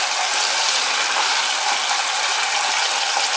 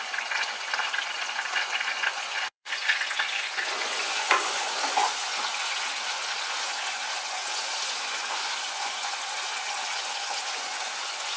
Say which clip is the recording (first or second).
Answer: first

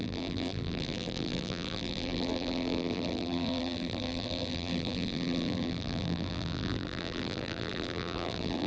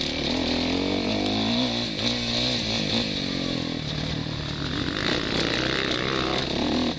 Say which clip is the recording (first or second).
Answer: second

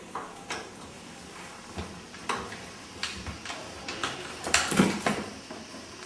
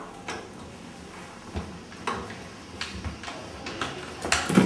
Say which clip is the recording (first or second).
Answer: second